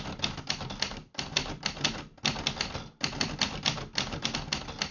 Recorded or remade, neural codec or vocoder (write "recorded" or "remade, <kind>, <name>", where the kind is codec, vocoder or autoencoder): recorded